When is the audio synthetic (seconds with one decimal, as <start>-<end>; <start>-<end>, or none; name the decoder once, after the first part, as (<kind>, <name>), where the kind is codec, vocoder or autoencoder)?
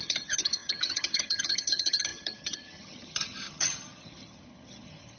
0.0-5.2 (vocoder, HiFi-GAN)